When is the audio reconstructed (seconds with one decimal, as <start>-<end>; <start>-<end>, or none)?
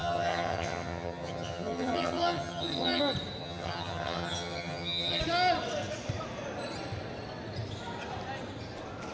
0.0-3.0; 3.4-5.2